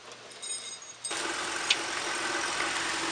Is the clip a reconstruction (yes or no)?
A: no